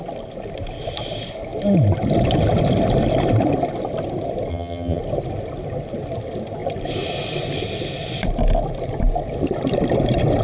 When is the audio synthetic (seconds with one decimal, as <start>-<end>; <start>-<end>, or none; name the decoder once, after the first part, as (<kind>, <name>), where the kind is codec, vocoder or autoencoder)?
4.5-5.0 (vocoder, HiFi-GAN)